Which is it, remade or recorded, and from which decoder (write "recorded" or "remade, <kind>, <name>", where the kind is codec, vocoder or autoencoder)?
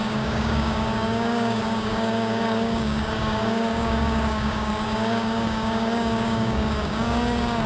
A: remade, codec, DAC